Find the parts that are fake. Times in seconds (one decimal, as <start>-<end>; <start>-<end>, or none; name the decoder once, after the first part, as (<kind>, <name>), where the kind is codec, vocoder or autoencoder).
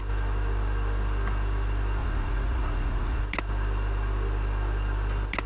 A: 2.0-3.2 (vocoder, Vocos)